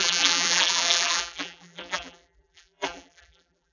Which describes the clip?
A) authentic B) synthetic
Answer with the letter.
B